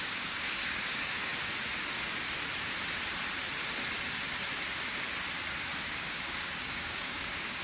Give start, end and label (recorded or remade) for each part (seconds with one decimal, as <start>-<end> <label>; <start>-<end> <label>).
0.0-1.3 remade; 1.3-5.9 recorded; 5.9-7.6 remade